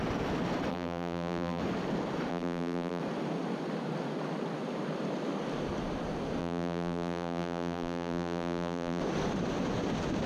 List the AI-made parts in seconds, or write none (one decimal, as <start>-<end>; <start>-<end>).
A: 0.7-1.6; 2.3-3.0; 6.4-9.0